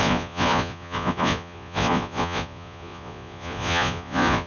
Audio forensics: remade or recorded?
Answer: remade